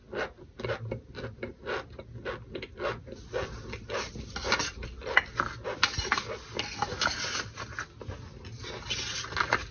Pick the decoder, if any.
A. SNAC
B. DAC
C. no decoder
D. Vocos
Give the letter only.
C